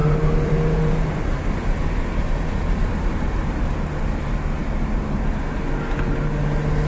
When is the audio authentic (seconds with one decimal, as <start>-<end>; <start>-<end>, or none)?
0.8-2.8; 3.7-6.9